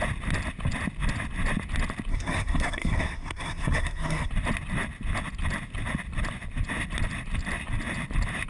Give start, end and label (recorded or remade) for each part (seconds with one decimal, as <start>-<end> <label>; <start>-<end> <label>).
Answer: 0.0-2.1 recorded; 2.1-4.3 remade; 4.3-8.5 recorded